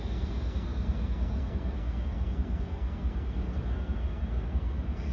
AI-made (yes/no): yes